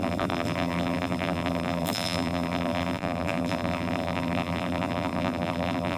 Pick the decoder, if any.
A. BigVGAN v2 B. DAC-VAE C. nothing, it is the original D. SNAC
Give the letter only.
A